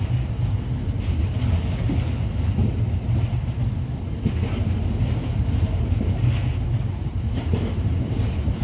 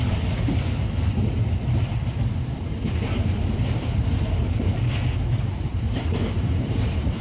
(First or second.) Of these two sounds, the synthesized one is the second